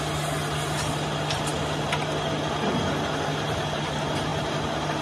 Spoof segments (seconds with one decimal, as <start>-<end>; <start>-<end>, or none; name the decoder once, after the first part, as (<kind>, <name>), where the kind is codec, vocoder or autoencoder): none